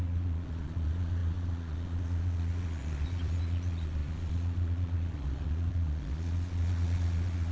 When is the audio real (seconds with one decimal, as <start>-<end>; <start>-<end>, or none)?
none